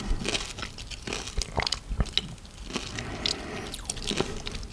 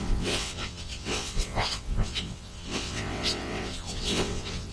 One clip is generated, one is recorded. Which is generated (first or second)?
second